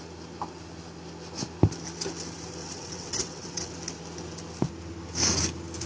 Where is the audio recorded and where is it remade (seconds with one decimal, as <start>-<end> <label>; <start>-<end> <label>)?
0.0-2.6 recorded; 2.6-3.7 remade; 3.7-5.9 recorded